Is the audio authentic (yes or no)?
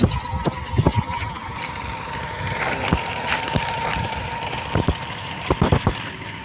yes